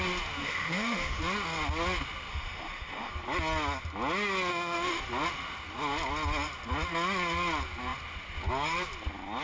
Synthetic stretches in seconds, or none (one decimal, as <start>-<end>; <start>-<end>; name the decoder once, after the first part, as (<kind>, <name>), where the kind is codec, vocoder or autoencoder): 0.4-1.2 (autoencoder, DAC-VAE); 2.3-3.1; 4.5-5.0